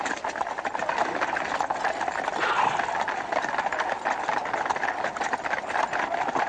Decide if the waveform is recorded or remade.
recorded